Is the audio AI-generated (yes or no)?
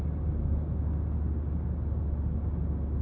no